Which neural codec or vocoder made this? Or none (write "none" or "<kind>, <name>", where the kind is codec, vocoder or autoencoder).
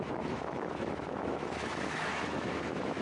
autoencoder, DAC-VAE